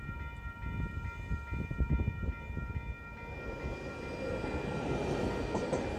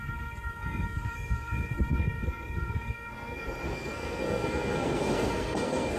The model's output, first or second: second